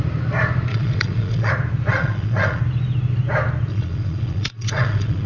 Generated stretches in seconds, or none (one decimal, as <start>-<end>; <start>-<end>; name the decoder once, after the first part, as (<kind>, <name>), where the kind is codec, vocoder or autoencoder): 0.7-1.5 (vocoder, Vocos); 1.9-2.6; 3.7-5.3

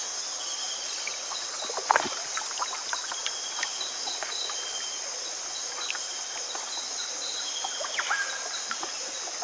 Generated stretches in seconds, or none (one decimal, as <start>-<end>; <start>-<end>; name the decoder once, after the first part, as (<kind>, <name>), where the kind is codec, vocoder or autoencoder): none

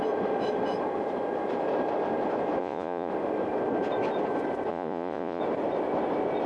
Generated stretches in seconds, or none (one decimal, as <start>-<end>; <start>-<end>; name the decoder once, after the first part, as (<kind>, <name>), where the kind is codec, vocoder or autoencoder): 2.6-3.1 (vocoder, Vocos); 4.7-5.4

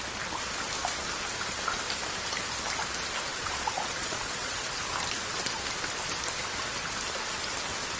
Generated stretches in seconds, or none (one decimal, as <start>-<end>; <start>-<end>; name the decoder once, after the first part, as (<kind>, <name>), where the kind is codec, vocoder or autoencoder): 3.3-4.7 (vocoder, Vocos)

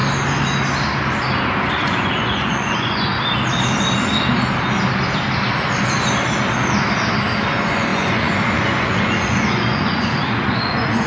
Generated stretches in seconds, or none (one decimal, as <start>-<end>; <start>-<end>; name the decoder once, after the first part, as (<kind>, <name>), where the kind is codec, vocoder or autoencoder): 1.7-3.1 (vocoder, Vocos); 7.5-11.1

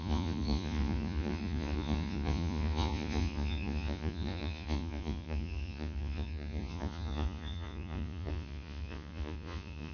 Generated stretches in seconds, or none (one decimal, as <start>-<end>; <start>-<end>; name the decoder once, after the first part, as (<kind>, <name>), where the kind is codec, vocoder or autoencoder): 0.0-9.9 (vocoder, Vocos)